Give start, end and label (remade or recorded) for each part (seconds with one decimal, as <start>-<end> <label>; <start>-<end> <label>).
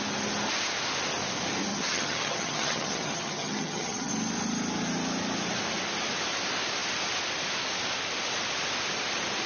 0.0-1.7 recorded; 1.7-4.1 remade; 4.1-9.5 recorded